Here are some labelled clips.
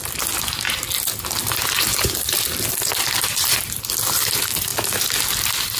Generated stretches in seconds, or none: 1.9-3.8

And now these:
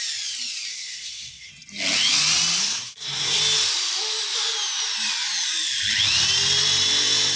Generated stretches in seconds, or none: 0.7-1.5; 2.6-3.4